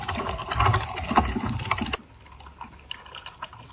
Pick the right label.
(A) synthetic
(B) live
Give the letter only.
B